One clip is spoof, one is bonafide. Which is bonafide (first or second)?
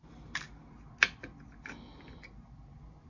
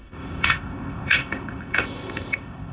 first